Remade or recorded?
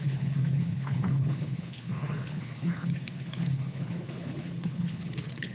remade